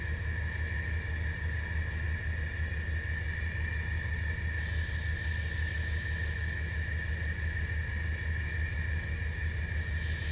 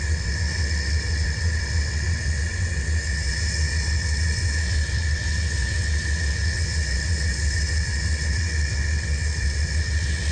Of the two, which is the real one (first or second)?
first